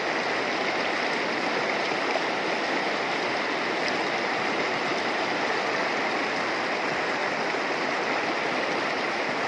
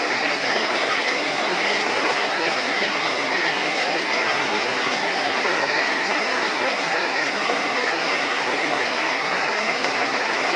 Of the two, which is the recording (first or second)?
first